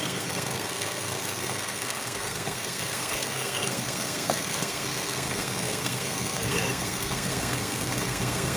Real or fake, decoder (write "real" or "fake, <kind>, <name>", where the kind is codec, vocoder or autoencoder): fake, codec, SNAC